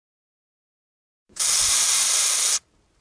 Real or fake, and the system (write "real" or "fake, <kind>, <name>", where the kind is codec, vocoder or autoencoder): real